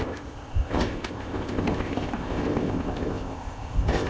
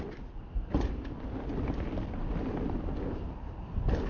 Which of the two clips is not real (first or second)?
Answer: first